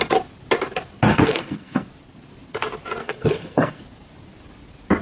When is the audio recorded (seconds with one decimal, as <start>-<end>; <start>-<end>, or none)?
0.0-1.1; 1.9-3.0; 3.8-5.0